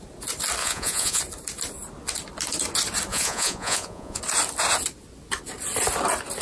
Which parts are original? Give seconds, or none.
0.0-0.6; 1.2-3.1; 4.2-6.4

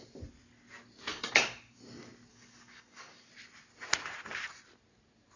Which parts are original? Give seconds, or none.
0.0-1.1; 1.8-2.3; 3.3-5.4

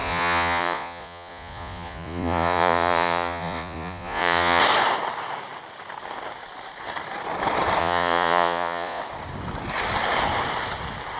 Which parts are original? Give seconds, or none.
4.6-7.8; 9.0-11.2